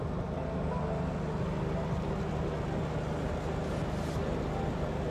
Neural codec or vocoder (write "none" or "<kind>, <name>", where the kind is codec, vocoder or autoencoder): none